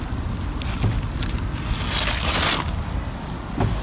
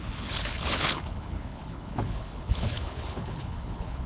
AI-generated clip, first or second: second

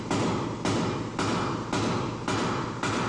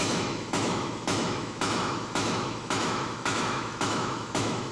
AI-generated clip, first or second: second